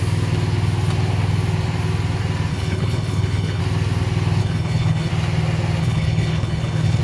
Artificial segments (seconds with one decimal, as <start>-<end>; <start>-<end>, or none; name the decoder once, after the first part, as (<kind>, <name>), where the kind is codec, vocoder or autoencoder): 2.5-3.6 (codec, HILCodec); 4.4-5.1; 5.8-7.0